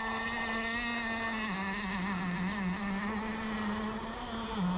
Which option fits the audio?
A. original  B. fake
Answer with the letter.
A